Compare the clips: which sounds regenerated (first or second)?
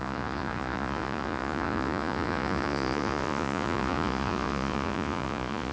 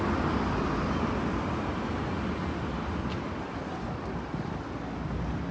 first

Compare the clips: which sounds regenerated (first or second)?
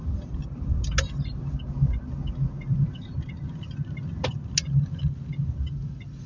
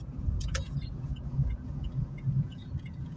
second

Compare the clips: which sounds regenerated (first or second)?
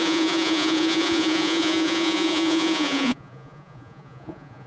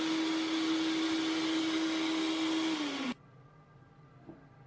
first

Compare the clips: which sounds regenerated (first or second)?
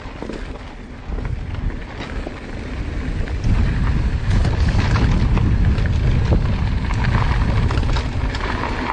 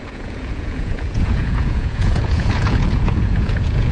second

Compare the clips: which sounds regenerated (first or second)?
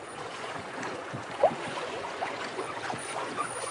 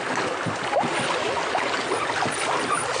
first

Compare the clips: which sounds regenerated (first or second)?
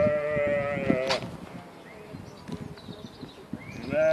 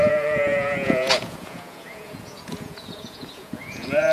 second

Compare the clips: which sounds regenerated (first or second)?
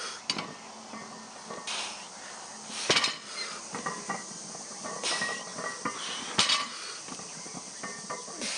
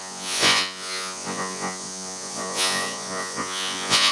second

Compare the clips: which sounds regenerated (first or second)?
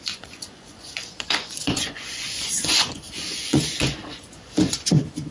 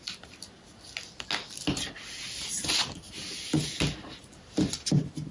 first